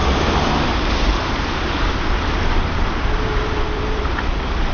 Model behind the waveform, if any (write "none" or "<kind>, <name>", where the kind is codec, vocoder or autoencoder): vocoder, BigVGAN v2